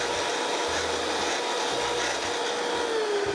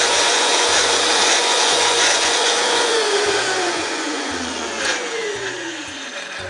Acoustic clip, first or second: first